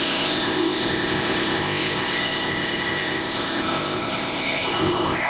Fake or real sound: fake